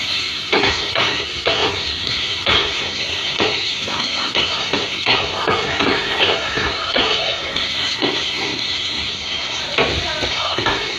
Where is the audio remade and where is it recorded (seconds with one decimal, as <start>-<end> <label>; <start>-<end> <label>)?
0.0-9.6 remade; 9.6-10.3 recorded; 10.3-11.0 remade